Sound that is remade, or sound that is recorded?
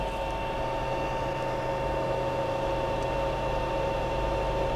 recorded